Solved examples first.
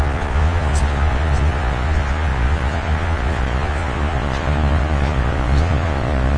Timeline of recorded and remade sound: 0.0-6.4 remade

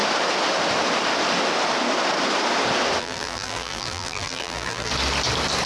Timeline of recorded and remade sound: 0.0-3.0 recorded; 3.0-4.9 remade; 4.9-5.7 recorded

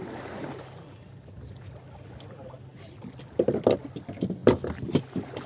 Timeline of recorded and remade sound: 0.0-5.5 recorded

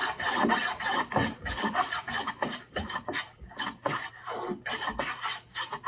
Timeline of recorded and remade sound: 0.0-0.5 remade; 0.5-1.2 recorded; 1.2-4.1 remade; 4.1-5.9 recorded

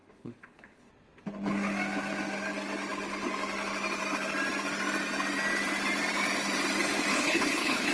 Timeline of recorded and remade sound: 0.0-0.9 remade; 0.9-7.1 recorded; 7.1-7.9 remade

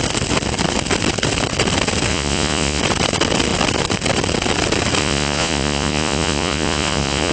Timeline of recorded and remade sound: 0.0-2.1 recorded; 2.1-2.8 remade; 2.8-5.0 recorded; 5.0-7.3 remade